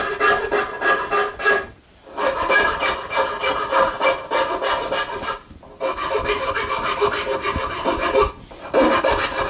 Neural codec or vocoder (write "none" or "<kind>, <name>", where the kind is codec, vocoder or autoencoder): none